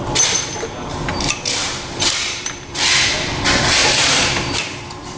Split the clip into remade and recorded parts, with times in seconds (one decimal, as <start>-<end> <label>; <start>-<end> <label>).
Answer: 0.0-1.6 recorded; 1.6-3.1 remade; 3.1-3.8 recorded; 3.8-5.2 remade